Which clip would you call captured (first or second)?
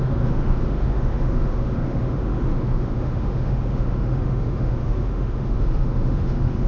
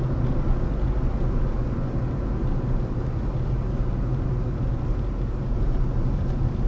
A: second